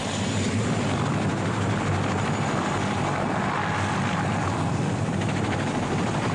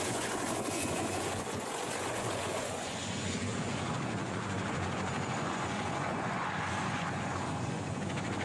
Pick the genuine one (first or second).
first